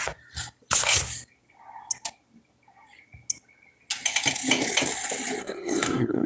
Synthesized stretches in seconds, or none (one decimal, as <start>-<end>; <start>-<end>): 5.4-6.3